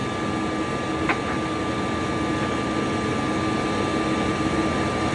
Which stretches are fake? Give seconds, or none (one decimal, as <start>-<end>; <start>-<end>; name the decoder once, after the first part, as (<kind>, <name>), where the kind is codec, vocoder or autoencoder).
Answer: none